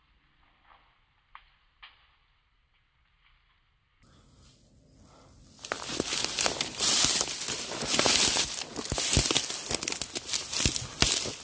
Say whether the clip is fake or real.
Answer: real